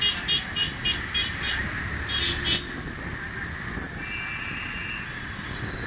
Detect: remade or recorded recorded